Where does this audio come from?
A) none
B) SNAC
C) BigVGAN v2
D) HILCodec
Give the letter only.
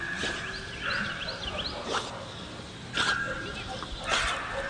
A